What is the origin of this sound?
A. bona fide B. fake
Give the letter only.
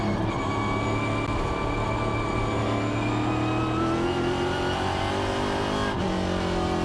A